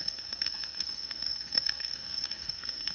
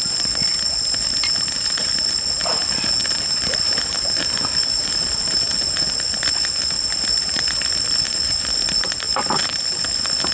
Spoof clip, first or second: first